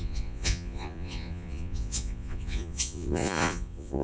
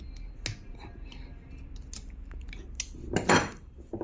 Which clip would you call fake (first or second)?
first